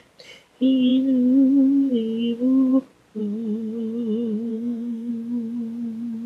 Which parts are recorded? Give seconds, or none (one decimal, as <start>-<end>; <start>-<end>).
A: 0.0-4.5; 5.1-6.3